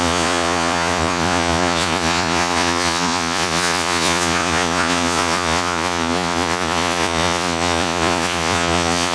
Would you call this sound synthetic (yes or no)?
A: yes